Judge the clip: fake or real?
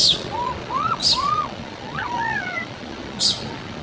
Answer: fake